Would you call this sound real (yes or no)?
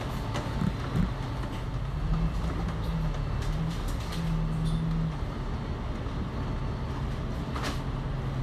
yes